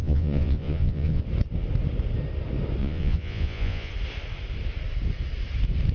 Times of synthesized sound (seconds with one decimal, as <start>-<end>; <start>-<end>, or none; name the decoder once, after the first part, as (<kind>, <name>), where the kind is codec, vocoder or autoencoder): 0.0-1.2 (vocoder, Vocos); 2.8-3.9